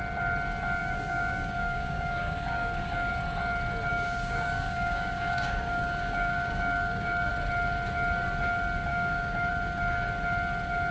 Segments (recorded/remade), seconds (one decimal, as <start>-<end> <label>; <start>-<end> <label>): 0.0-0.8 recorded; 0.8-3.1 remade; 3.1-3.9 recorded; 3.9-7.3 remade; 7.3-8.9 recorded; 8.9-9.5 remade; 9.5-10.9 recorded